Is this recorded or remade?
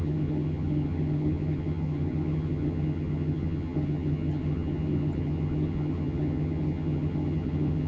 remade